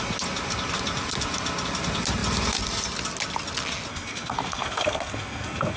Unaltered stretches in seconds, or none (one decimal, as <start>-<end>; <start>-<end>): 0.0-3.9